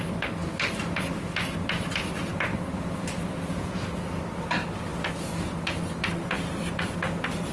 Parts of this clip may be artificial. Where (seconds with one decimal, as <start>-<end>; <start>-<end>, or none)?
3.5-4.2